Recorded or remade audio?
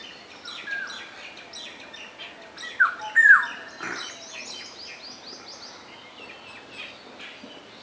recorded